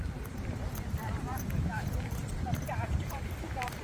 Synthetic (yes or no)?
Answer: yes